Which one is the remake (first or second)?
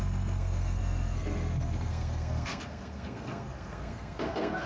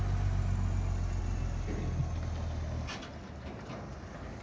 first